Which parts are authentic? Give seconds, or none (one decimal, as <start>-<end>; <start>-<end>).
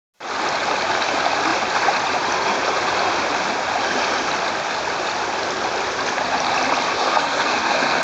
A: 0.0-6.9